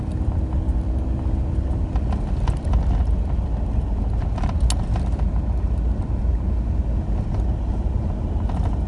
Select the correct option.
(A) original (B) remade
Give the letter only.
A